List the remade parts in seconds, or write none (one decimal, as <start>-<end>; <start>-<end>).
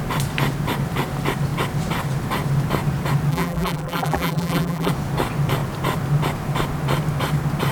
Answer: 3.3-4.9